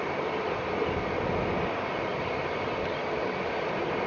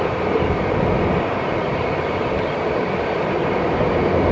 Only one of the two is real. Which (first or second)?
first